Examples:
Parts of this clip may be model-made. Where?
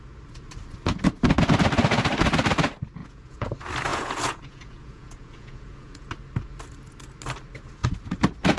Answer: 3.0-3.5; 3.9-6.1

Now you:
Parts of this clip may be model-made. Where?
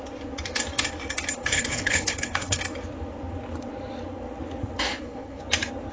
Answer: 1.4-2.6; 4.9-5.4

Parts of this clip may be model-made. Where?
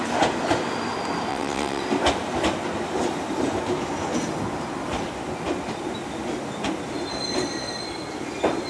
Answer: 1.3-1.8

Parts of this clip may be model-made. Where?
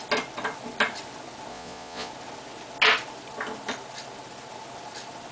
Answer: 1.5-2.1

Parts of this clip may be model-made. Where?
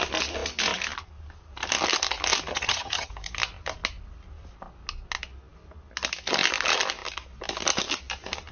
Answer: 2.5-3.1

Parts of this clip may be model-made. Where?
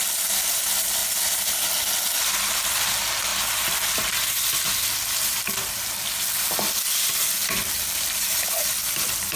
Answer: none